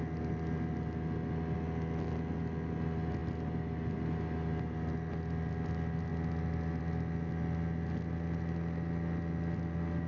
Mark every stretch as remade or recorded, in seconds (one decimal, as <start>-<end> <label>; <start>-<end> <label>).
0.0-10.1 recorded